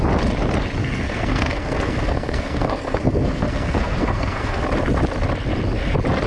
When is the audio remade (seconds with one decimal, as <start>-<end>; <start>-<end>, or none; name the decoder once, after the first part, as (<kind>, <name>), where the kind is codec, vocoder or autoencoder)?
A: 0.8-4.6 (codec, SNAC)